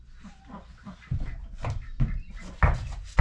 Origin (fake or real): real